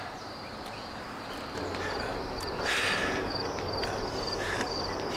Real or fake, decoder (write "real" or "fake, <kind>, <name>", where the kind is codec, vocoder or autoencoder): fake, vocoder, BigVGAN v2